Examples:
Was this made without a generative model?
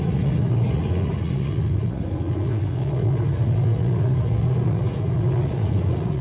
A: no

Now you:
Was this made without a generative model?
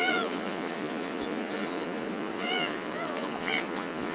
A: no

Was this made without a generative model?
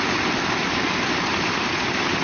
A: yes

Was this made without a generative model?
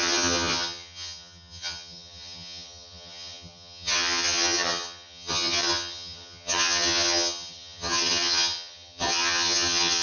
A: no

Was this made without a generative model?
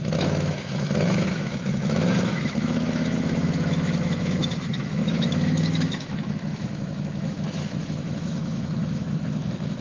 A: no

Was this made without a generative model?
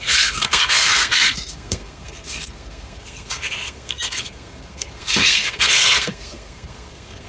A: no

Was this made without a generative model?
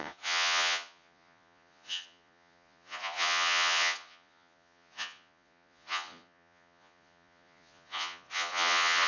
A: no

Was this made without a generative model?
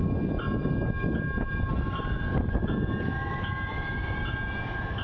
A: yes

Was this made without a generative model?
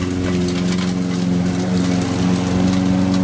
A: yes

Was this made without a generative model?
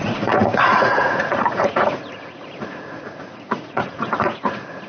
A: no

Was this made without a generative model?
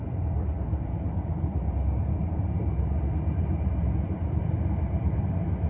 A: no